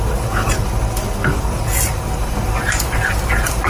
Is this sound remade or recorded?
recorded